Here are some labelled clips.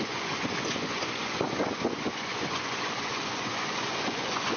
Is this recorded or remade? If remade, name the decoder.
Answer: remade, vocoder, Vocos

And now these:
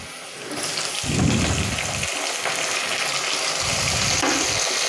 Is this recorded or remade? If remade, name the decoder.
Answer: recorded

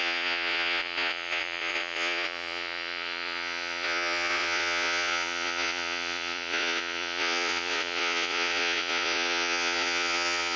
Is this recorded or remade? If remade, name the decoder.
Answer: remade, vocoder, Vocos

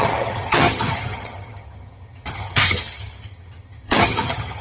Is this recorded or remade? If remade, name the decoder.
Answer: remade, vocoder, HiFi-GAN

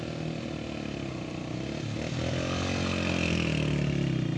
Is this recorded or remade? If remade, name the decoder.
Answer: recorded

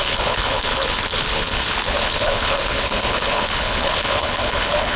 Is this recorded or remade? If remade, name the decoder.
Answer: remade, codec, HILCodec